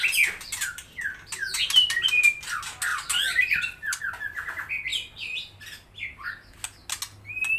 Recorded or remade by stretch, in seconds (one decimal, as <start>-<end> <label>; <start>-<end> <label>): 0.0-2.9 recorded; 2.9-4.0 remade; 4.0-7.6 recorded